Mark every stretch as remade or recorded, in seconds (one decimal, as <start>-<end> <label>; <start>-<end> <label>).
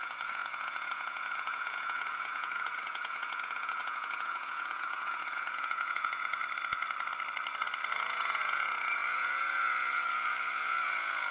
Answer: 0.0-6.4 remade; 6.4-8.0 recorded; 8.0-11.3 remade